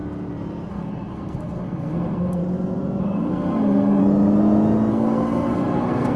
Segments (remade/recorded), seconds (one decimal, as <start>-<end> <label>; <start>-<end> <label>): 0.0-0.7 recorded; 0.7-2.4 remade; 2.4-3.0 recorded; 3.0-4.0 remade; 4.0-4.9 recorded; 4.9-6.2 remade